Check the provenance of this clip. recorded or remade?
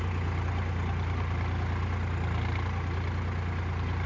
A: recorded